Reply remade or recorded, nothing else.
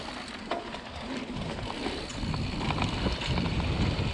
remade